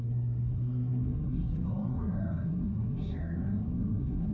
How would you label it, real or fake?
fake